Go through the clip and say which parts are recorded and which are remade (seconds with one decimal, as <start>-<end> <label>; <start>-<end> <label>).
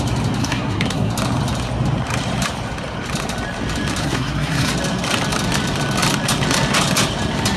0.0-0.4 recorded; 0.4-1.1 remade; 1.1-4.0 recorded; 4.0-4.7 remade; 4.7-7.6 recorded